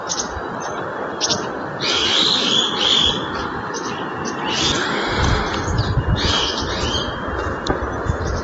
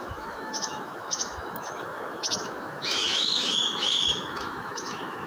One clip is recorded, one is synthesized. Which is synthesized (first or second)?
second